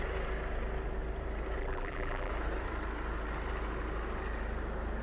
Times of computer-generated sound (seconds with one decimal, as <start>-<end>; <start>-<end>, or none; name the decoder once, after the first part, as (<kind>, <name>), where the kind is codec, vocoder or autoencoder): 1.6-2.3 (vocoder, BigVGAN v2)